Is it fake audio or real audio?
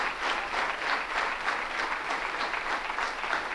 real